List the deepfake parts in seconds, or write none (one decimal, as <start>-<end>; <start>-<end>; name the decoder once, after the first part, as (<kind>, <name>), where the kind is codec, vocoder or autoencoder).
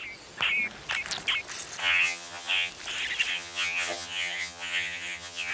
1.8-2.7 (vocoder, HiFi-GAN); 3.3-5.5